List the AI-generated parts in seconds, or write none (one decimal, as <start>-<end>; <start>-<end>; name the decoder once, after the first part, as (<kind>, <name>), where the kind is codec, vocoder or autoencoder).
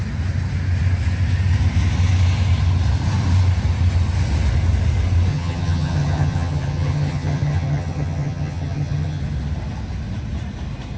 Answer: 5.3-9.2 (vocoder, HiFi-GAN)